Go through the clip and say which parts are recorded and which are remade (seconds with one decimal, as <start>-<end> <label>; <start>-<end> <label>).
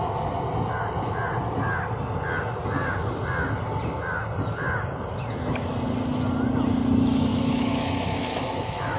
0.0-7.3 recorded; 7.3-9.0 remade